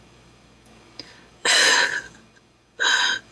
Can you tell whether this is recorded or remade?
remade